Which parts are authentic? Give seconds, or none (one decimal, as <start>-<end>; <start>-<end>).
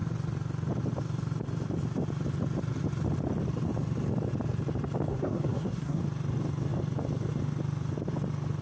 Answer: 0.0-5.1; 6.0-8.6